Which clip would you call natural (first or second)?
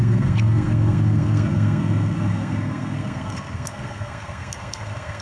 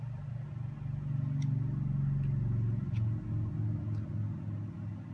second